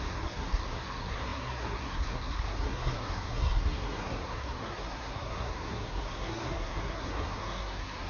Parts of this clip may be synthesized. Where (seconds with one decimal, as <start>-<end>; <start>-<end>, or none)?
0.0-8.1